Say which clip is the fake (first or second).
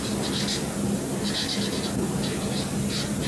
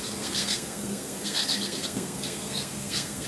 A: second